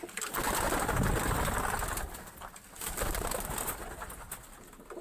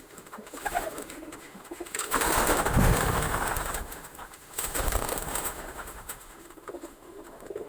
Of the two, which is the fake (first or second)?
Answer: second